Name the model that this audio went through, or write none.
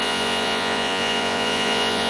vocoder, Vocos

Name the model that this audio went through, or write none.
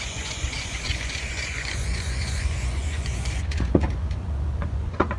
vocoder, Vocos